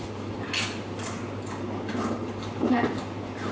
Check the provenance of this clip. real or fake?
real